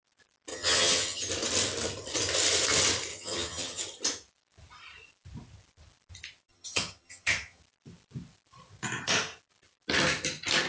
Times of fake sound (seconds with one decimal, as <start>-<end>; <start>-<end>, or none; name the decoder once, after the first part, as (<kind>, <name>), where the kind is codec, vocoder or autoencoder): 0.5-1.3 (vocoder, HiFi-GAN); 3.1-3.8; 6.5-7.6